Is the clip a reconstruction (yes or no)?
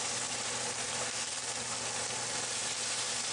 no